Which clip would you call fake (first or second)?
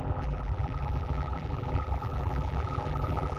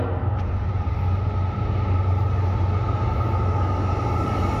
first